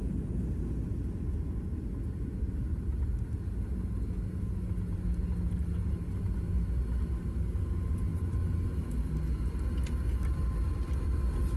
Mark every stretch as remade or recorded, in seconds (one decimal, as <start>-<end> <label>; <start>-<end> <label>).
0.0-11.6 recorded